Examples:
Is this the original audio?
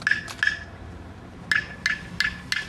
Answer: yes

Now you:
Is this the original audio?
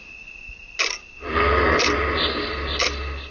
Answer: yes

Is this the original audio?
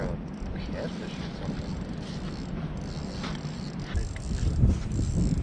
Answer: yes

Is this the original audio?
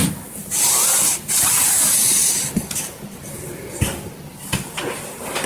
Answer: yes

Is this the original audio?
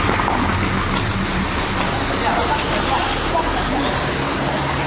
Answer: yes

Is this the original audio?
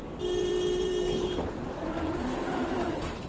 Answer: no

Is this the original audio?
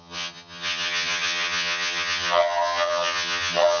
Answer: no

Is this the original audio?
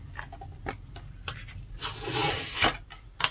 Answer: yes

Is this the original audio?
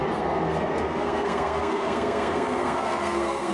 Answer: no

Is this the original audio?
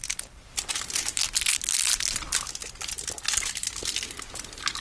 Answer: yes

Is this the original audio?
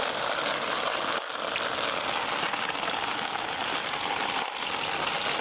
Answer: yes